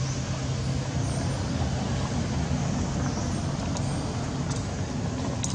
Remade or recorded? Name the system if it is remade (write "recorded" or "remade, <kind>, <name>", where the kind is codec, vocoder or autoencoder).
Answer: recorded